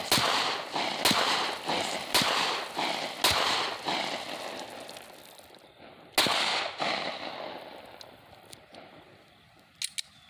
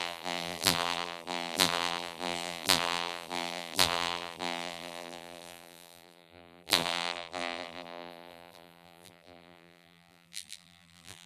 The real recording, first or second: first